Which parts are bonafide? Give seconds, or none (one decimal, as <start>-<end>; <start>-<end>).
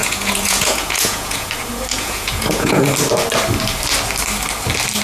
1.5-1.9; 2.8-5.0